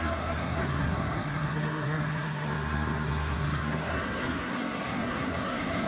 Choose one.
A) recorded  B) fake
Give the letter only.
B